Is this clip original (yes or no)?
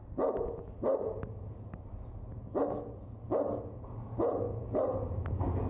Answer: yes